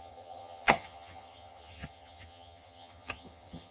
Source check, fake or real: fake